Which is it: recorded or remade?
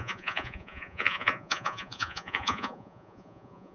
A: remade